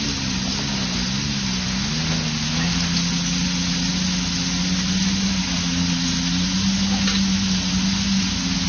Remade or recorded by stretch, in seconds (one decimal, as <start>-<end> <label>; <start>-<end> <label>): 0.0-8.7 recorded